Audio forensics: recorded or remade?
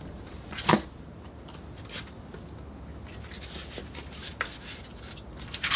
recorded